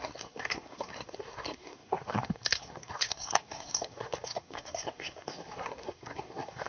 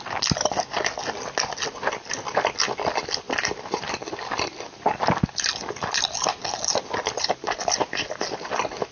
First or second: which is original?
second